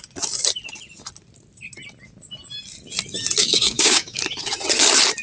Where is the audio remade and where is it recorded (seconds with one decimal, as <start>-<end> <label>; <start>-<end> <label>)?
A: 0.0-3.4 recorded; 3.4-4.2 remade; 4.2-5.2 recorded